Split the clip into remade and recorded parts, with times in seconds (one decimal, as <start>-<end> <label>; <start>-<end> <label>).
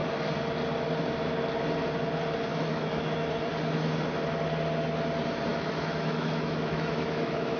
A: 0.0-2.5 recorded; 2.5-3.5 remade; 3.5-5.5 recorded; 5.5-7.6 remade